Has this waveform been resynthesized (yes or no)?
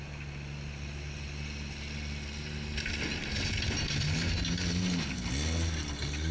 no